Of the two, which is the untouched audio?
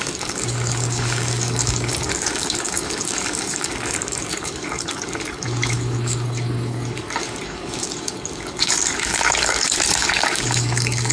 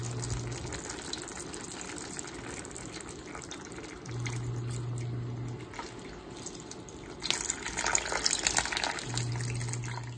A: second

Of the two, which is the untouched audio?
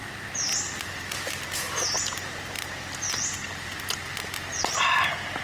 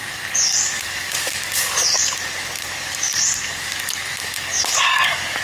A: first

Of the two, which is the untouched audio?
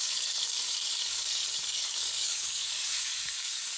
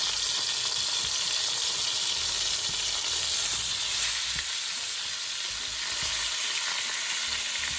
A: second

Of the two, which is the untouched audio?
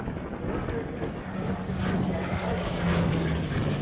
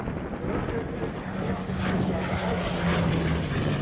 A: second